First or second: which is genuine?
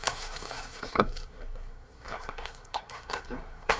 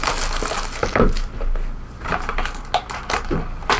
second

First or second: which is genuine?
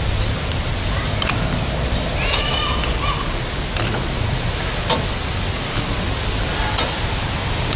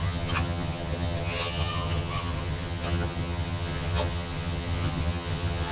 first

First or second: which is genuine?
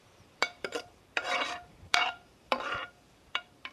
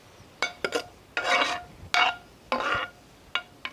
second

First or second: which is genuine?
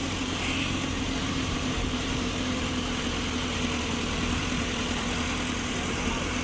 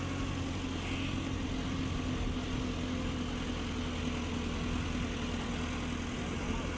second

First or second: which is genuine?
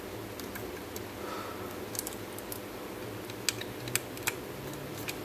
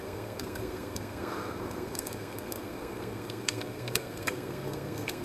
first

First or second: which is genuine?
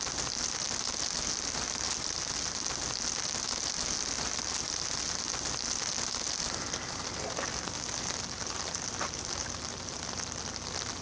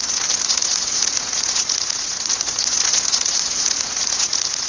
first